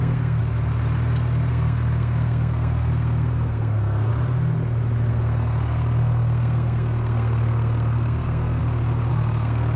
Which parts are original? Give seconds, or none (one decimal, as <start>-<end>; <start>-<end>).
0.4-1.5; 4.1-5.1; 8.6-9.1